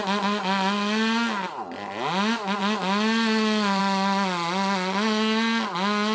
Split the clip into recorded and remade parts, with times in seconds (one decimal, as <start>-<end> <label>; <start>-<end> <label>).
0.0-6.1 recorded